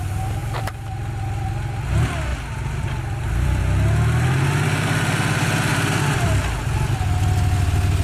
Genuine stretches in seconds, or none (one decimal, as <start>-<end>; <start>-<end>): 0.0-0.4; 0.9-2.3; 3.6-5.7; 6.9-8.0